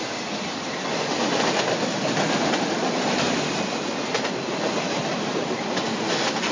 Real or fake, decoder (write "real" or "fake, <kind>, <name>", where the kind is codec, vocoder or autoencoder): real